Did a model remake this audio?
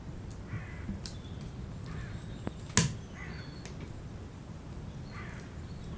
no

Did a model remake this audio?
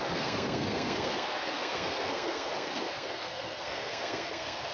yes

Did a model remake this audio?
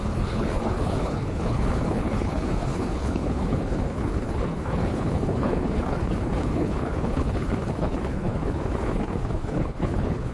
yes